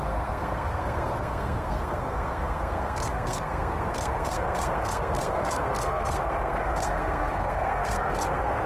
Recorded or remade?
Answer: remade